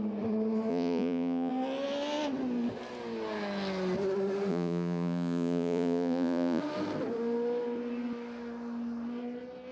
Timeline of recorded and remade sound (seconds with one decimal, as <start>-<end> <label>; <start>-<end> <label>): 0.0-0.7 recorded; 0.7-1.5 remade; 1.5-4.5 recorded; 4.5-6.6 remade; 6.6-9.7 recorded